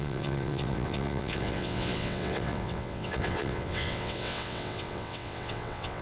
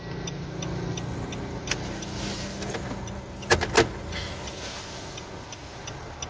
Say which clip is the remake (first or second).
first